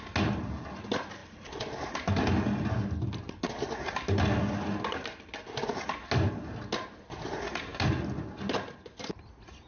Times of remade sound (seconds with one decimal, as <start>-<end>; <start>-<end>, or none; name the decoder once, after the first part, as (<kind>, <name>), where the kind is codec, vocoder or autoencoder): none